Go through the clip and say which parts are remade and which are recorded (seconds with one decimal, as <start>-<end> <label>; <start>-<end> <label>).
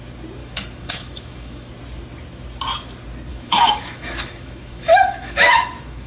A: 0.0-0.4 recorded; 0.4-1.7 remade; 1.7-3.3 recorded; 3.3-6.1 remade